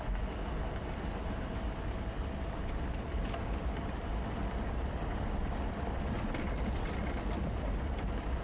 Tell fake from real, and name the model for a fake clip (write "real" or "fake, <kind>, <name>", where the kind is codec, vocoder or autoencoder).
real